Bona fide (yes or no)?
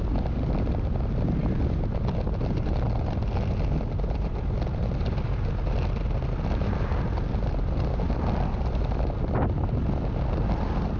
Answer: yes